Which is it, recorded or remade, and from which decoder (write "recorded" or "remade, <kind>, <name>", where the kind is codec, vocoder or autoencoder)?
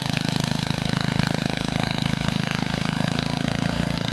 remade, codec, SNAC